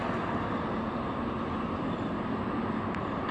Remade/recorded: recorded